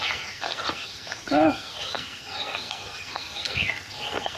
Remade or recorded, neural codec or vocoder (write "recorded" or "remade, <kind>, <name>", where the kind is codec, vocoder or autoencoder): remade, codec, SNAC